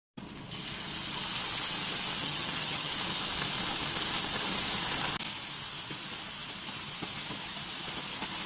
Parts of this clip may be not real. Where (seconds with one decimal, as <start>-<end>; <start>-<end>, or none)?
2.2-2.9